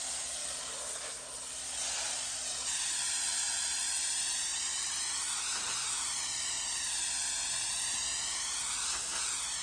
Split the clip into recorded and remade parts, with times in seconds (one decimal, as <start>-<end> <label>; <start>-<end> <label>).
0.0-9.6 recorded